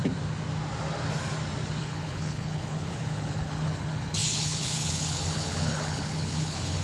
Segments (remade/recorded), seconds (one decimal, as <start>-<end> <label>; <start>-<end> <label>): 0.0-1.8 recorded; 1.8-6.8 remade